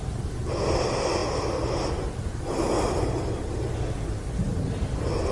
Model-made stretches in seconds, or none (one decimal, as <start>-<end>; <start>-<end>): none